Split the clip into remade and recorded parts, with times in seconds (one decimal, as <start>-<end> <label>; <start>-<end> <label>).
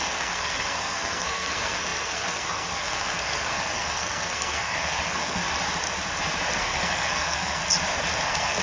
0.0-5.4 remade; 5.4-6.6 recorded; 6.6-7.6 remade; 7.6-8.2 recorded; 8.2-8.6 remade